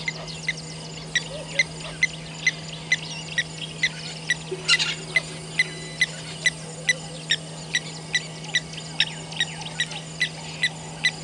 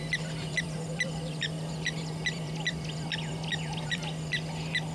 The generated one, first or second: second